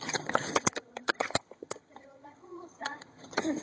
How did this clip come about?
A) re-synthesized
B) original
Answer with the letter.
A